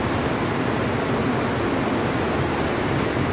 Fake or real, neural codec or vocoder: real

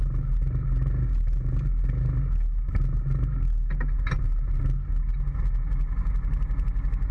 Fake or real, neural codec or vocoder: real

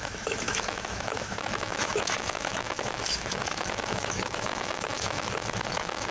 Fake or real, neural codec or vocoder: fake, autoencoder, DAC-VAE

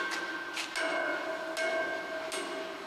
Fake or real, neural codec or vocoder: real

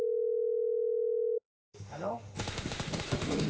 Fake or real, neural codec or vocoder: fake, autoencoder, DAC-VAE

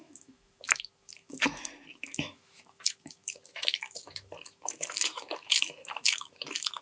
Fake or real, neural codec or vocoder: fake, autoencoder, DAC-VAE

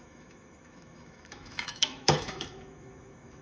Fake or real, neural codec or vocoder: fake, autoencoder, DAC-VAE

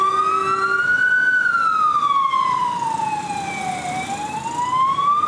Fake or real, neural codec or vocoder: real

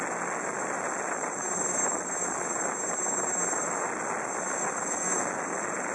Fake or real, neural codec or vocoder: real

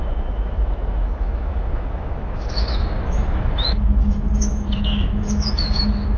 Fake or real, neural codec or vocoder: fake, autoencoder, DAC-VAE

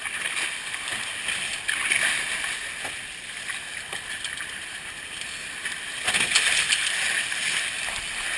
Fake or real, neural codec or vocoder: real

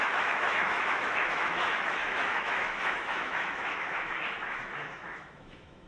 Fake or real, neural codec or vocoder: fake, autoencoder, DAC-VAE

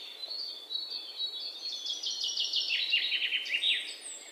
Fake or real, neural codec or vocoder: real